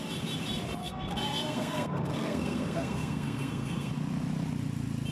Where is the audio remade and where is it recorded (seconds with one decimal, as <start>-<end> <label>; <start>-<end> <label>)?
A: 0.0-0.8 recorded; 0.8-3.9 remade; 3.9-5.1 recorded